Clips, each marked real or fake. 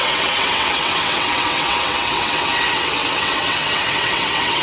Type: fake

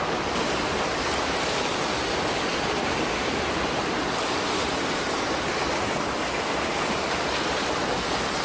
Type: real